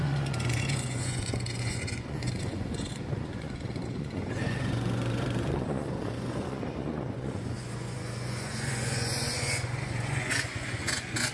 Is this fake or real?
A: fake